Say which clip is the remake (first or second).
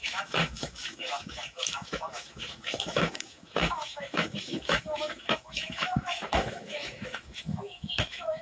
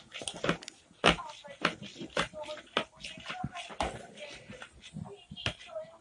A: first